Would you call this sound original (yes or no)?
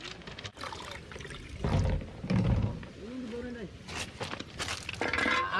yes